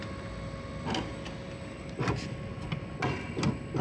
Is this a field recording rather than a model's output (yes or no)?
yes